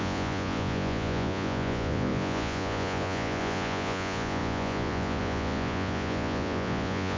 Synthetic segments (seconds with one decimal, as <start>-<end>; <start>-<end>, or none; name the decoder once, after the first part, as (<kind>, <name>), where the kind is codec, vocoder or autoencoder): 0.0-7.2 (vocoder, Vocos)